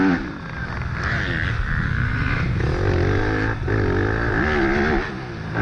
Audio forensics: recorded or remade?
recorded